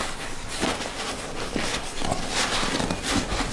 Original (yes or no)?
yes